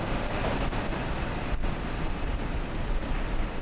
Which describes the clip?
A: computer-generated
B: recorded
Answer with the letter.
B